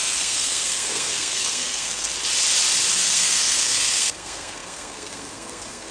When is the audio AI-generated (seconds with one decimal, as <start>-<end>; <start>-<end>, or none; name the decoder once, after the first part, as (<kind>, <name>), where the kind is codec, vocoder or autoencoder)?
0.0-2.1 (codec, SNAC); 2.9-5.9